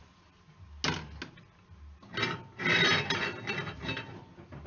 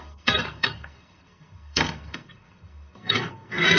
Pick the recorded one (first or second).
first